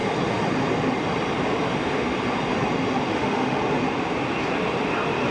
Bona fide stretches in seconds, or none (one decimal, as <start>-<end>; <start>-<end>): 0.0-3.1; 3.6-5.3